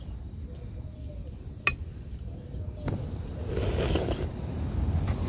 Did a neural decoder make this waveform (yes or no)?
no